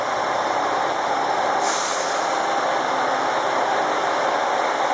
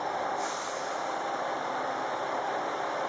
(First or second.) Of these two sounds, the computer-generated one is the second